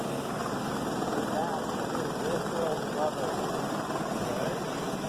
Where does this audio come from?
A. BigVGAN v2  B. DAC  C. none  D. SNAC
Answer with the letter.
C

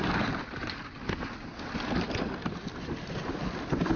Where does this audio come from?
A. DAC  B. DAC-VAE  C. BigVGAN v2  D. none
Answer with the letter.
D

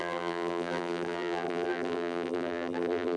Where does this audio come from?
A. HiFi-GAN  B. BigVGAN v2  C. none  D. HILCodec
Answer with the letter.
B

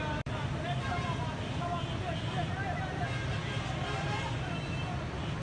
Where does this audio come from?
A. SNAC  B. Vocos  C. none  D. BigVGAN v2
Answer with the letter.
D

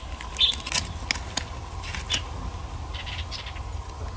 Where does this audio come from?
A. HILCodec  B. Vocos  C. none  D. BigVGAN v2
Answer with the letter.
C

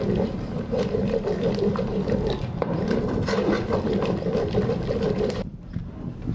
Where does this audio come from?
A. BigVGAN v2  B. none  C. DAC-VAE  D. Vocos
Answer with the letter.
A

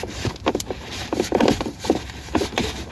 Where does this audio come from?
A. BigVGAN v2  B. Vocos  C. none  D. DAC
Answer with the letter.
A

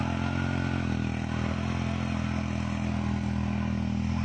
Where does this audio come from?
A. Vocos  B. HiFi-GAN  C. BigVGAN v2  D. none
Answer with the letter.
D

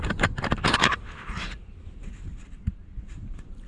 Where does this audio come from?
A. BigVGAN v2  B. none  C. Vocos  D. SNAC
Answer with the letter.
A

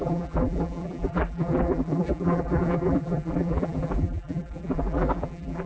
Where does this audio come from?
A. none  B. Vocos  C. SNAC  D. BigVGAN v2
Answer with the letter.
D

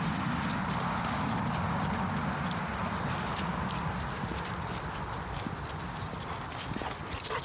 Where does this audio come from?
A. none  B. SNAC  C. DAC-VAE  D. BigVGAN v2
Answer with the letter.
A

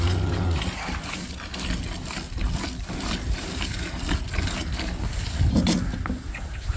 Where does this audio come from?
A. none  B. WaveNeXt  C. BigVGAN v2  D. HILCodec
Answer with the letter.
A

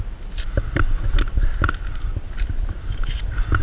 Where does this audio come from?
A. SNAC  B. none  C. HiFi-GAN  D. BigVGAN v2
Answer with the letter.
D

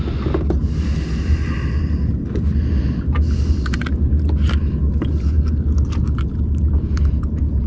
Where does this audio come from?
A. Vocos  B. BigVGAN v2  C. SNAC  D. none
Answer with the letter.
D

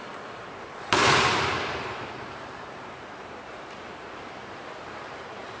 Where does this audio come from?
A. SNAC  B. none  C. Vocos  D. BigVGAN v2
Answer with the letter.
D